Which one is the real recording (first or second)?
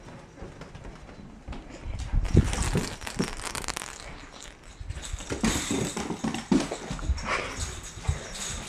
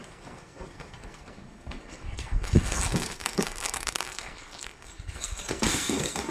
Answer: first